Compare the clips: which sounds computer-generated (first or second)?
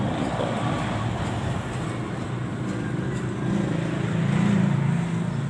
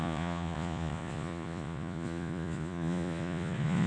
second